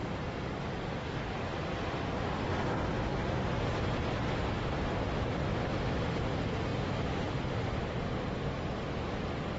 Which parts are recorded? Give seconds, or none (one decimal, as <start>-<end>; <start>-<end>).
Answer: none